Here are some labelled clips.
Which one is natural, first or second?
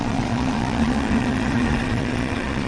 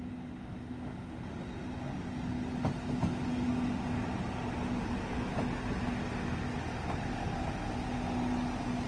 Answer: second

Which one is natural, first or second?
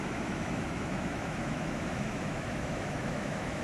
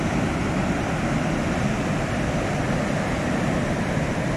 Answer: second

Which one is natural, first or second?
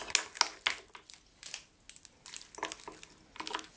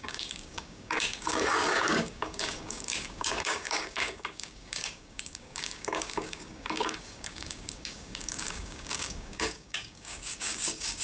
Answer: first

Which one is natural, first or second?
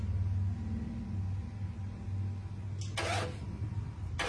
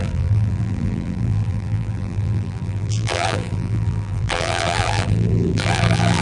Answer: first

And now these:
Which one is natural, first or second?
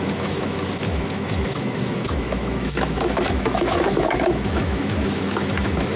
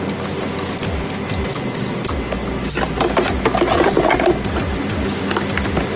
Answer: second